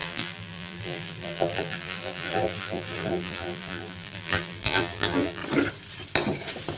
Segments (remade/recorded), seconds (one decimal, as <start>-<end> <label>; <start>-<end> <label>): 0.0-5.4 remade; 5.4-6.8 recorded